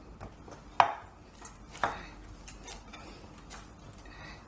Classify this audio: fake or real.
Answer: real